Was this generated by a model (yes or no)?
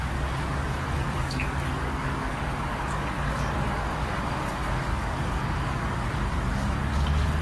yes